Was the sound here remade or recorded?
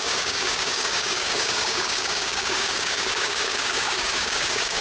remade